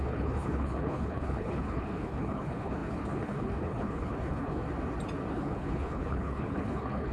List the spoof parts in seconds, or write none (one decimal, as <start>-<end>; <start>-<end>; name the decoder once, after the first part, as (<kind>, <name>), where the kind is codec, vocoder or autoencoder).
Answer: 0.0-4.6 (codec, HILCodec); 5.3-7.1